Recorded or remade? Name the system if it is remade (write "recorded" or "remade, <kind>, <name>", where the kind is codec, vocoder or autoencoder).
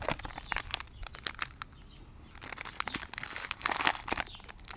recorded